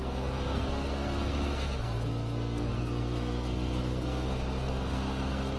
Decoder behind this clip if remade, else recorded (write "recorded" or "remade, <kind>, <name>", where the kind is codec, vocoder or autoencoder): remade, codec, SNAC